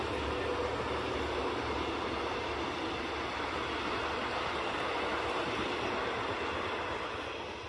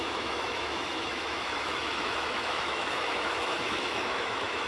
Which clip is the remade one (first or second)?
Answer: second